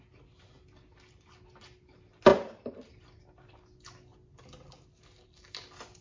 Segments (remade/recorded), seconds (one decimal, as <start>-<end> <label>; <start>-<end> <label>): 0.0-2.3 recorded; 2.3-2.9 remade; 2.9-6.0 recorded